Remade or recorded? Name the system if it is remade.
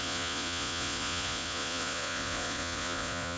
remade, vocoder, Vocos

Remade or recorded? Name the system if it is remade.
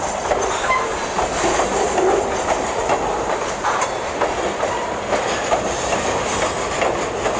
recorded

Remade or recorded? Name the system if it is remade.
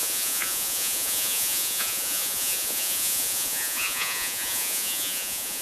remade, vocoder, Vocos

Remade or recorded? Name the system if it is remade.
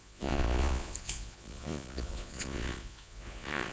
remade, vocoder, Vocos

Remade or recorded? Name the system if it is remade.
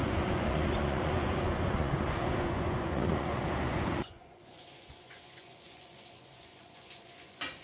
remade, vocoder, Vocos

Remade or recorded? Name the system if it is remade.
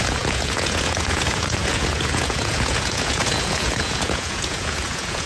remade, vocoder, Vocos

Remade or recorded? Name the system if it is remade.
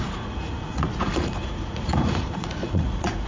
remade, vocoder, Vocos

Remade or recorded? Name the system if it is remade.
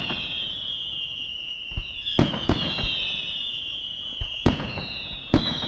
remade, vocoder, Vocos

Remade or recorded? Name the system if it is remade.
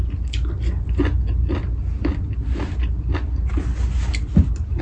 recorded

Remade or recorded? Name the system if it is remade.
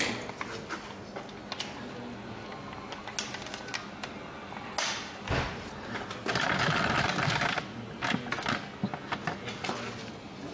recorded